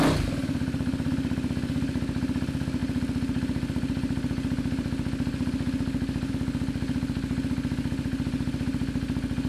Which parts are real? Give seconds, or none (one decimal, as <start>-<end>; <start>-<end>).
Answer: 0.0-0.4; 1.1-9.5

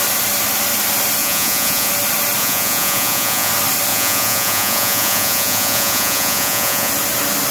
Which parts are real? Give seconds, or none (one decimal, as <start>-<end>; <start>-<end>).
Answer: 0.0-1.2; 1.9-2.4; 3.5-3.9; 6.9-7.5

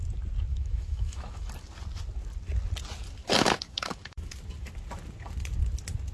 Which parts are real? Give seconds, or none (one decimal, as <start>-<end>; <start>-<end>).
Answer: 0.0-0.5; 1.5-3.2; 4.3-6.1

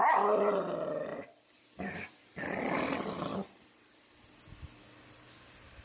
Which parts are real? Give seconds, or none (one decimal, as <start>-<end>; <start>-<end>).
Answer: 0.0-5.8

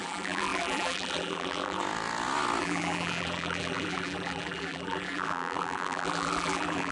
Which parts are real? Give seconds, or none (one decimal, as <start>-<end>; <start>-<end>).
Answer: 1.8-2.6

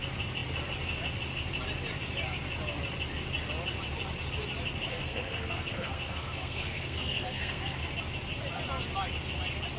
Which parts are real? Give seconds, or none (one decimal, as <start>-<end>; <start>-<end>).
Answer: 0.0-4.9; 7.9-9.8

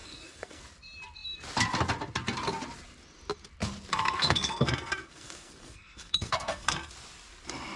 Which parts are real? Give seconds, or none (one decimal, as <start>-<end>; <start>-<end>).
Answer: 0.6-3.9; 6.9-7.8

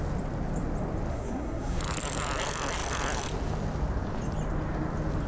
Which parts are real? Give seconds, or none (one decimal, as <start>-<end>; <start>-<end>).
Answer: 0.0-1.1; 1.8-5.3